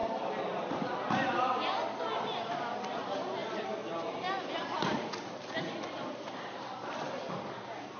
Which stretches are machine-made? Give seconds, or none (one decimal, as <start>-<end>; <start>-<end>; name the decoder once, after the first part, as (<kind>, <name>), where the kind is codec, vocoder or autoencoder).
none